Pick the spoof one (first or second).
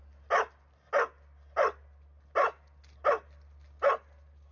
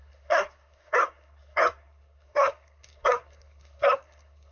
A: second